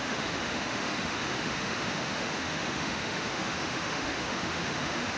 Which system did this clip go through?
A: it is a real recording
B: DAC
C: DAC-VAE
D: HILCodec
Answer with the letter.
C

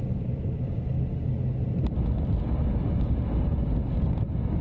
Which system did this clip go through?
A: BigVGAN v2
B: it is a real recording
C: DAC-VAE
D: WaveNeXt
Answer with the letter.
B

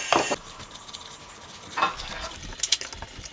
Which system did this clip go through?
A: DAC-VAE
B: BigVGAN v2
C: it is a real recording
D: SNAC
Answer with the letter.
C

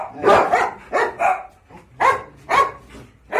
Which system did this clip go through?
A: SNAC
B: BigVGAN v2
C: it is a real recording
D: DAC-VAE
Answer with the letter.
C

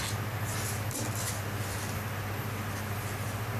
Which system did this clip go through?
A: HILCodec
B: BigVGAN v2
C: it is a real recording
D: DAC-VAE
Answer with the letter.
C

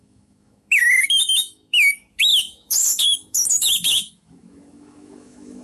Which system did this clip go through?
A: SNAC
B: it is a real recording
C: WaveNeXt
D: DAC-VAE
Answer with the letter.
D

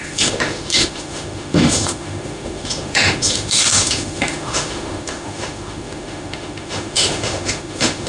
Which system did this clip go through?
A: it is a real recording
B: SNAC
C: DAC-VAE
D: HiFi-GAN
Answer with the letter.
C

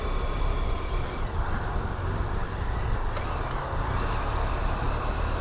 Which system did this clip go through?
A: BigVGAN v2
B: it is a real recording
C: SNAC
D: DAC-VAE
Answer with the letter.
B